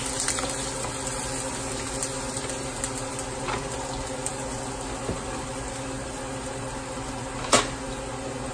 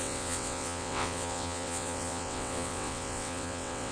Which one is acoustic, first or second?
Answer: first